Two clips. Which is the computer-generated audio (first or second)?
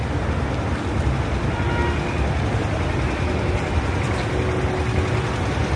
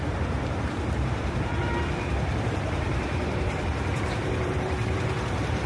second